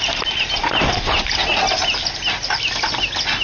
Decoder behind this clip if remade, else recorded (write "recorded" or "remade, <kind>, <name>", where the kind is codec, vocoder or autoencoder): recorded